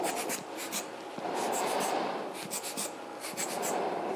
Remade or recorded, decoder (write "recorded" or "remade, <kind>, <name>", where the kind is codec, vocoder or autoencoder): recorded